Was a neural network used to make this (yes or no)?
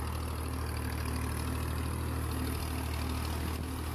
no